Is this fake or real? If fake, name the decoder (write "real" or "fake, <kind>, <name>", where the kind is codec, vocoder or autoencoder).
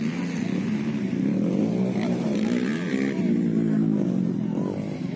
real